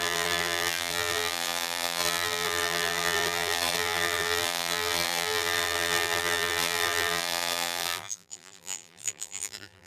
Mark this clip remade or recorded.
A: remade